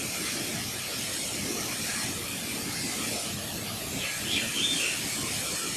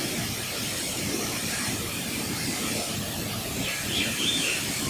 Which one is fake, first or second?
second